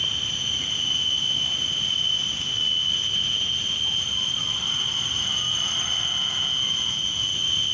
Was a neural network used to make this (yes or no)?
no